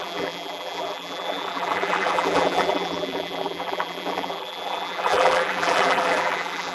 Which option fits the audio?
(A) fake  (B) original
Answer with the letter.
A